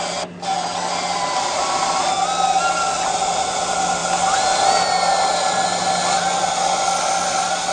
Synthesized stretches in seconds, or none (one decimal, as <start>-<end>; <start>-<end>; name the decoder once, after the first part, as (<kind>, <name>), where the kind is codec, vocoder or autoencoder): none